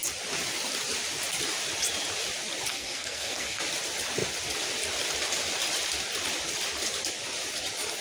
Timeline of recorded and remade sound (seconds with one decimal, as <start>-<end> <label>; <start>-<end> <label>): 0.0-2.7 recorded; 2.7-3.6 remade; 3.6-8.0 recorded